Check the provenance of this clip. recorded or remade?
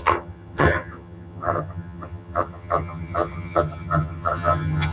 remade